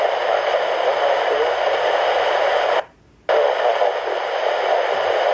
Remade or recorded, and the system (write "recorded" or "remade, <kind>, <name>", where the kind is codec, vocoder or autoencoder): remade, vocoder, BigVGAN v2